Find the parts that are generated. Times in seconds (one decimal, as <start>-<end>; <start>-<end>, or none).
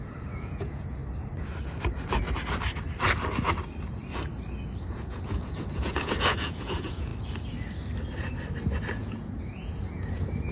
0.0-1.0; 4.9-7.1; 8.9-10.5